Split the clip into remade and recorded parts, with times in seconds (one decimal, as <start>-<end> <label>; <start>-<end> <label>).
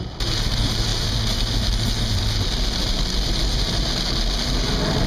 0.0-5.1 recorded